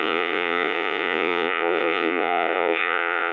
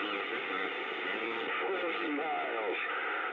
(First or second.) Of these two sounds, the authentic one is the second